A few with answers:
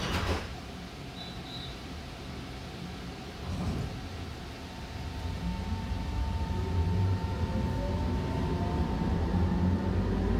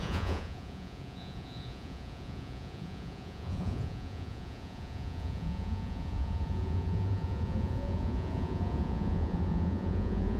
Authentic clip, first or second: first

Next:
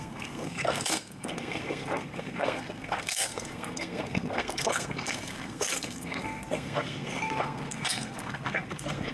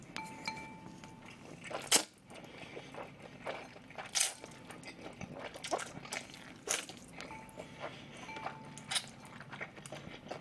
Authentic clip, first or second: second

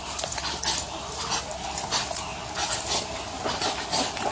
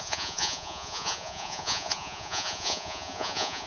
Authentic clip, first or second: first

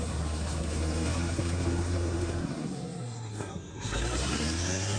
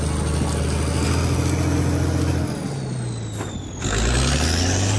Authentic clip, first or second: second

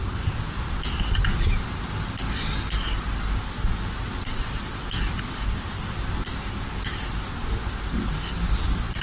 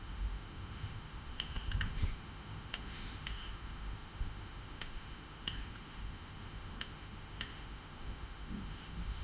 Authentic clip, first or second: first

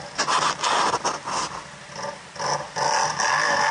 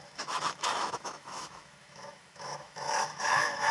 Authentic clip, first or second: first